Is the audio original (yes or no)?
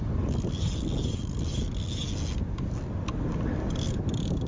yes